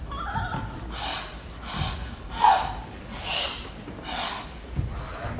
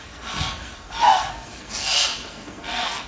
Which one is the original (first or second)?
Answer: first